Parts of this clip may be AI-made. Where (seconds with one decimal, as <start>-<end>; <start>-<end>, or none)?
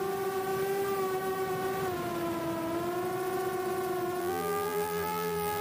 4.2-5.6